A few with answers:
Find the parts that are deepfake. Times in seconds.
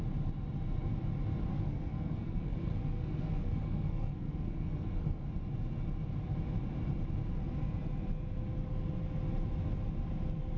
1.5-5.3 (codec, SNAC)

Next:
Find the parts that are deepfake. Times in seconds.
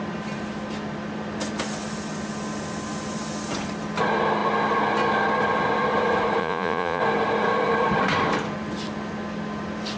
6.4-7.0 (vocoder, Vocos)